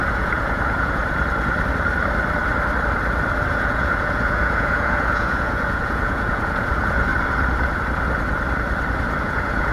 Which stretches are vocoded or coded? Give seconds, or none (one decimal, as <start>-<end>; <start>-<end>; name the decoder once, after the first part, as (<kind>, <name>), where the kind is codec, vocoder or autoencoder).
0.0-1.0 (vocoder, Vocos); 3.5-7.1; 9.2-9.7

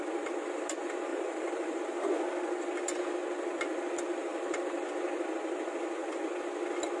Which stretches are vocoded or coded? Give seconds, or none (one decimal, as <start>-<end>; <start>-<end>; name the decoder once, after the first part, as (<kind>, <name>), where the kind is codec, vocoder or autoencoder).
1.1-1.8 (vocoder, BigVGAN v2); 4.3-4.9

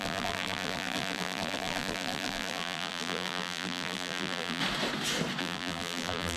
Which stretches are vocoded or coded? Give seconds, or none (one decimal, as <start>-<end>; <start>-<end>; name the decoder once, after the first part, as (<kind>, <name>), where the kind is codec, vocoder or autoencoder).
0.0-4.6 (vocoder, BigVGAN v2); 5.4-6.4

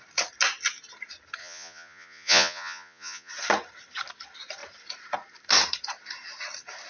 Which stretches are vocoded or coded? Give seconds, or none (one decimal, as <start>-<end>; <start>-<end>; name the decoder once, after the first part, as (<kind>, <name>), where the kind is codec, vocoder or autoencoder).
1.4-3.3 (vocoder, Vocos)

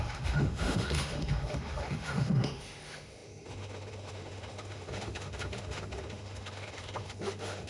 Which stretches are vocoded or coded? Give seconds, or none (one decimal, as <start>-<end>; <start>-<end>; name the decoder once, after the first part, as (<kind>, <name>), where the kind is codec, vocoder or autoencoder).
0.0-7.7 (autoencoder, DAC-VAE)

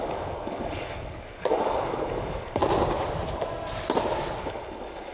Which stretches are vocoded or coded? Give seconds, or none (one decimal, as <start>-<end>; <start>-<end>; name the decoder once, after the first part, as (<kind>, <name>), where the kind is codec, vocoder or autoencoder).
0.0-2.6 (codec, DAC); 4.4-5.1

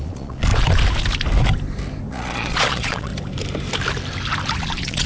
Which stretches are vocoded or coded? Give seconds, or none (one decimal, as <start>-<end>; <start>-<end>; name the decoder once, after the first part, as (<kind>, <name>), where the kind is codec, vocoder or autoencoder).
0.0-0.5 (vocoder, Vocos); 2.1-3.1; 4.6-5.1